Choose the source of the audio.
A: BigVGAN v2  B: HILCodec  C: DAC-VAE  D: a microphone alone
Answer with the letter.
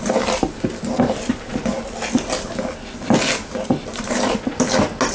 D